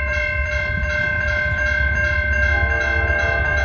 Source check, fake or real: real